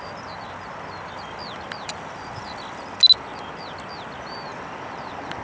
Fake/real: real